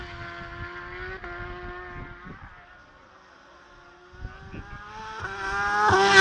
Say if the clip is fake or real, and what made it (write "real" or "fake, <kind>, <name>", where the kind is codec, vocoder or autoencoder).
real